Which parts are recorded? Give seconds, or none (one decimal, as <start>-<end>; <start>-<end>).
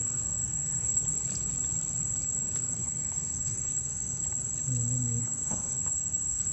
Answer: 1.0-2.4; 4.2-5.2